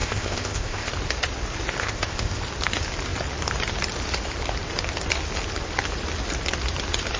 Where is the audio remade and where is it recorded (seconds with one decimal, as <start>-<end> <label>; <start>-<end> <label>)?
0.0-0.9 remade; 0.9-1.8 recorded; 1.8-2.4 remade; 2.4-7.2 recorded